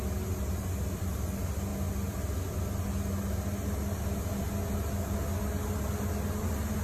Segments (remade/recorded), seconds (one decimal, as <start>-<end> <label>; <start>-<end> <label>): 0.0-6.8 recorded